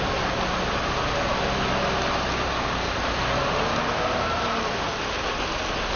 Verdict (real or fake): real